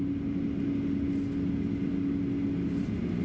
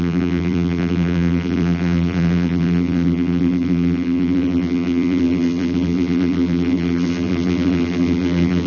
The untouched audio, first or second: first